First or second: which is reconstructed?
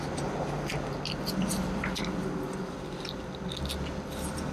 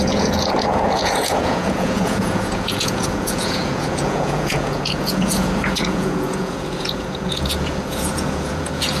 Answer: second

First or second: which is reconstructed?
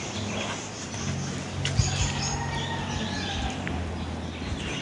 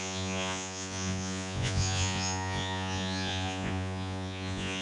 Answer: second